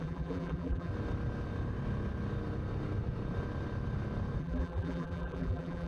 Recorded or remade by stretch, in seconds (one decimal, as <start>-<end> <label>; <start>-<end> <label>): 0.0-0.9 remade; 0.9-4.4 recorded; 4.4-5.9 remade